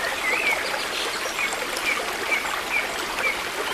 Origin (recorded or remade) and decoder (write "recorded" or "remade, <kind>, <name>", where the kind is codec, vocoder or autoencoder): recorded